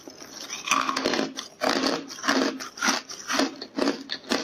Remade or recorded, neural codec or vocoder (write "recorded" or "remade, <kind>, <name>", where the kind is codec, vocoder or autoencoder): recorded